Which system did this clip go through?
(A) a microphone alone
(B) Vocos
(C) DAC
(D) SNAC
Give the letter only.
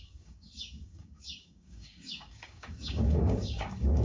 C